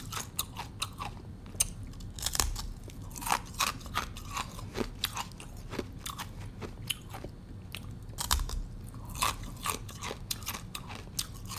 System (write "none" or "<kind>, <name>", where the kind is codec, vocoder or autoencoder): none